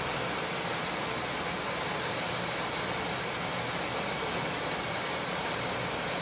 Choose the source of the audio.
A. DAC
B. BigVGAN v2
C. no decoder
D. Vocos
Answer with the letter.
C